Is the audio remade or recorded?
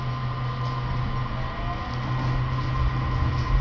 recorded